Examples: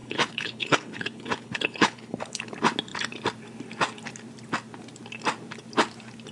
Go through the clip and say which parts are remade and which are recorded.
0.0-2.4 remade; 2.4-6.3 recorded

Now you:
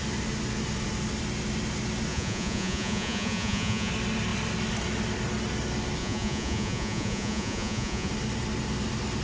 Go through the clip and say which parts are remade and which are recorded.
0.0-2.1 recorded; 2.1-3.9 remade; 3.9-6.0 recorded; 6.0-8.1 remade; 8.1-9.2 recorded

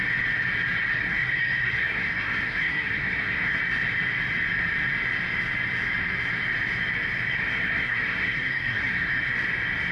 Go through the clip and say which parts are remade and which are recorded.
0.0-1.0 recorded; 1.0-3.6 remade; 3.6-7.3 recorded; 7.3-9.3 remade; 9.3-9.9 recorded